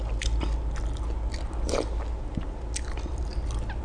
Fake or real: real